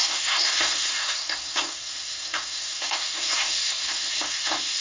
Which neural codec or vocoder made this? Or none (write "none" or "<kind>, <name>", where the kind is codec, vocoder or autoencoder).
codec, SNAC